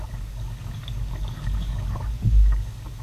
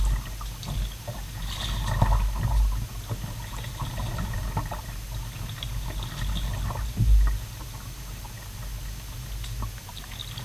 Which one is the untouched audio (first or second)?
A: second